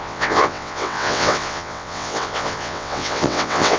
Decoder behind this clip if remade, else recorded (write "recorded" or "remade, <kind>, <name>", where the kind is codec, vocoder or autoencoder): remade, vocoder, WaveNeXt